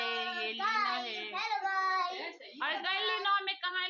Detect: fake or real real